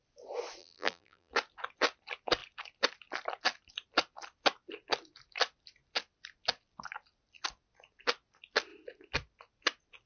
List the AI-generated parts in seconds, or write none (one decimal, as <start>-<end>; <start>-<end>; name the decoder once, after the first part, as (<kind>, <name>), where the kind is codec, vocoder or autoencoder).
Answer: 0.6-1.3 (vocoder, BigVGAN v2)